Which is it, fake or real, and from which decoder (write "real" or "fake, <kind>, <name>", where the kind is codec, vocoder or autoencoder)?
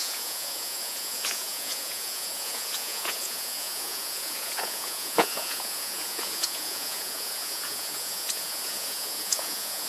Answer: fake, vocoder, Vocos